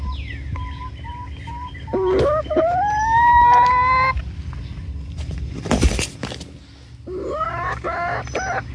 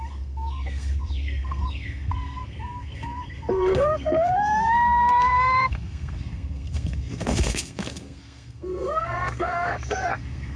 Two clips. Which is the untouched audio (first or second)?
first